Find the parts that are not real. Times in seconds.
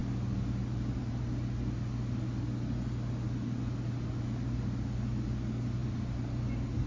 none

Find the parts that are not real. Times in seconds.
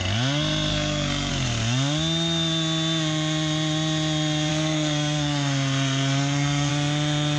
0.7-1.3 (codec, SNAC); 4.5-6.7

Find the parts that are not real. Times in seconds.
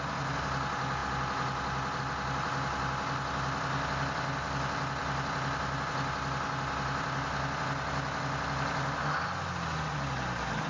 none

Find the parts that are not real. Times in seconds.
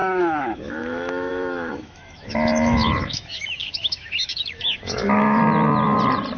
0.0-5.4 (autoencoder, DAC-VAE)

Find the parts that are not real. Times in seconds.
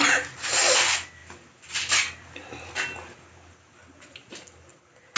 none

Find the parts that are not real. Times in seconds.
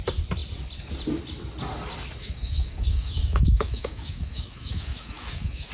2.2-5.7 (autoencoder, DAC-VAE)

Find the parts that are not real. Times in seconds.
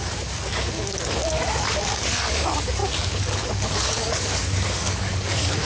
0.0-5.7 (codec, DAC)